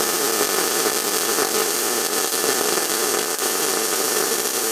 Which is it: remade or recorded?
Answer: remade